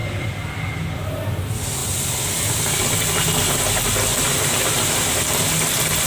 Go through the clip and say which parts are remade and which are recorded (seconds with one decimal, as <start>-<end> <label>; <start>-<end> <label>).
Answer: 0.0-1.2 remade; 1.2-1.8 recorded; 1.8-3.4 remade; 3.4-4.1 recorded; 4.1-6.1 remade